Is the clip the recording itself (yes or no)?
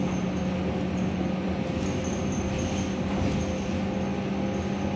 yes